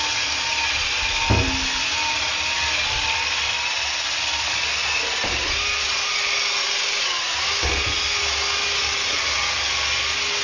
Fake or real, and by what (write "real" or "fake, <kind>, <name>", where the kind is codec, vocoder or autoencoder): real